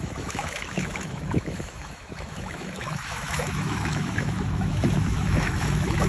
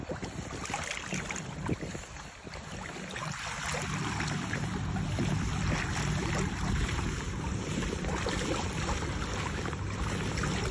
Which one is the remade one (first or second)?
first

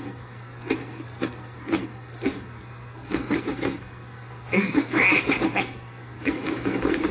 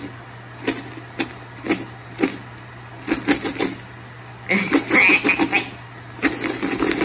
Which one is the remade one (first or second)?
first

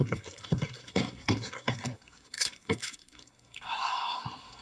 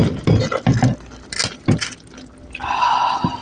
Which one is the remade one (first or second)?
first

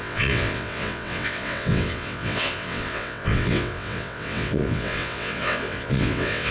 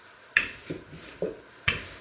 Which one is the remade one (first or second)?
first